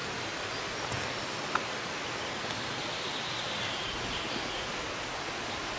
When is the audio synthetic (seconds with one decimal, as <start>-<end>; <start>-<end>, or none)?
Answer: none